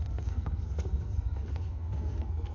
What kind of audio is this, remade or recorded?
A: remade